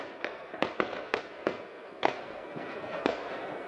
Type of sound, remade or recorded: remade